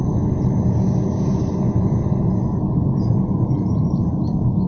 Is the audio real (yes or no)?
yes